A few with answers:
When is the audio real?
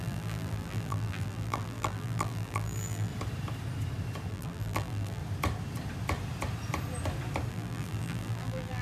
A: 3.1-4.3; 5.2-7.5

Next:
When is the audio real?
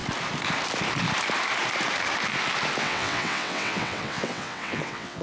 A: 0.0-2.8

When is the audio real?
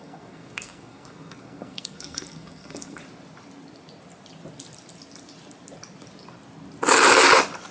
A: 3.0-7.7